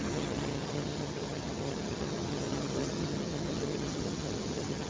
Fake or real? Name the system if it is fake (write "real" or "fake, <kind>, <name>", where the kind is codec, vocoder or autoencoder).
fake, vocoder, HiFi-GAN